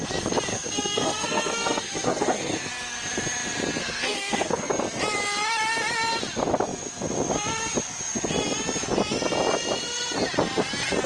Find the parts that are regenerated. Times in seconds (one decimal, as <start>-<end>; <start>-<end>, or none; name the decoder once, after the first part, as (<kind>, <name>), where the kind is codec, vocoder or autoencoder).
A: 0.5-2.7 (codec, SNAC); 3.8-4.7